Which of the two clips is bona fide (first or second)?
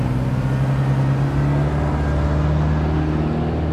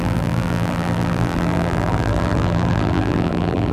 first